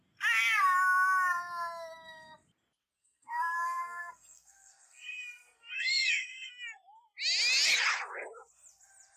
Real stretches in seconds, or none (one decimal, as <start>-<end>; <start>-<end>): 0.0-3.0; 6.5-9.2